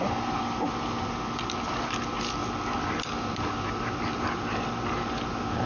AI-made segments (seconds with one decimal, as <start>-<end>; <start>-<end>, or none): none